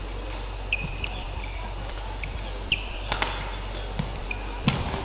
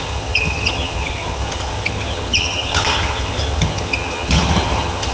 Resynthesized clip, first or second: second